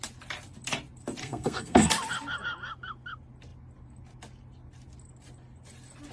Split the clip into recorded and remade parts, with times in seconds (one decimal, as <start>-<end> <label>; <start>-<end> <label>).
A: 0.0-1.2 recorded; 1.2-1.9 remade; 1.9-6.1 recorded